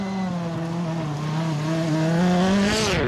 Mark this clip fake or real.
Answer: real